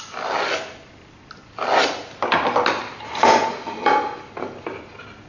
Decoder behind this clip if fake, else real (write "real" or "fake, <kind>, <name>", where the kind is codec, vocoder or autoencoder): real